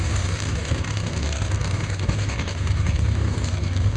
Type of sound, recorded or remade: remade